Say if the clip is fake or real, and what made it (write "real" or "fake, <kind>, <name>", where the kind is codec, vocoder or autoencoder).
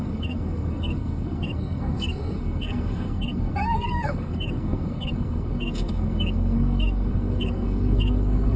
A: fake, codec, SNAC